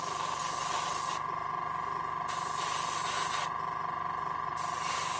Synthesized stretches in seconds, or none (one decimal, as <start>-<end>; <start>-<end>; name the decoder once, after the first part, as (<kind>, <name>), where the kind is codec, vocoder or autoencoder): none